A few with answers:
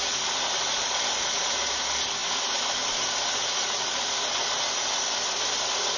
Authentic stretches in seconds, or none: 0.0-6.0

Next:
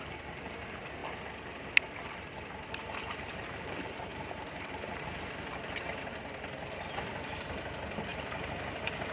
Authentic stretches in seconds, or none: 0.0-1.0; 3.6-4.1; 7.6-8.1

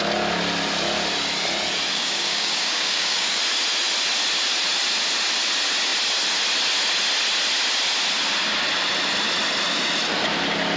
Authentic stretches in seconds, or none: 0.0-1.9; 3.4-10.8